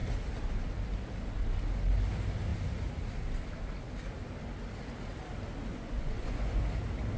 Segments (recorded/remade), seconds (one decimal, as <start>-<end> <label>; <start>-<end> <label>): 0.0-5.7 recorded; 5.7-6.6 remade; 6.6-7.2 recorded